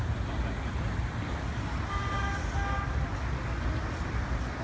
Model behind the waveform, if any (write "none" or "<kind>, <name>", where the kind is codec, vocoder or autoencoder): none